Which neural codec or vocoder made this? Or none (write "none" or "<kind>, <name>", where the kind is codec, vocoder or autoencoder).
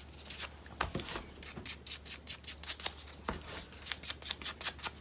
none